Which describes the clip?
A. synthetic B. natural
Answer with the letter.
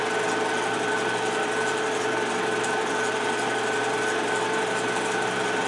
B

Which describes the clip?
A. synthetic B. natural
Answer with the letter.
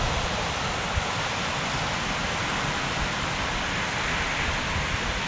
B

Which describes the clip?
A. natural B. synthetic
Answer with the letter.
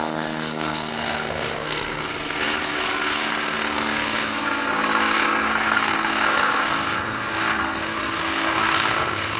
B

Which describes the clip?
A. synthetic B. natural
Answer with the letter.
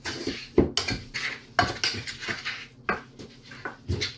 B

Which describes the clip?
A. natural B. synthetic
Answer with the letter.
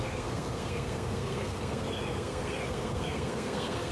B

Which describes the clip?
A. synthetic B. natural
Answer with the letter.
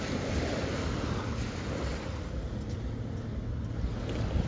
B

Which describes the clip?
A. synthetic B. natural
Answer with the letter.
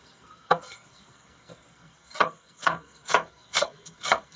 A